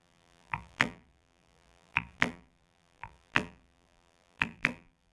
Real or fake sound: fake